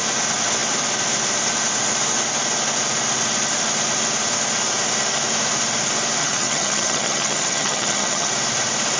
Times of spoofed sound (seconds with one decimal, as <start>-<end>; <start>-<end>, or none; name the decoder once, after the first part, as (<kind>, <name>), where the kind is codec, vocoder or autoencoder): 6.2-8.3 (vocoder, HiFi-GAN)